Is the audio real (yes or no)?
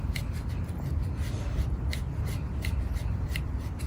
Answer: yes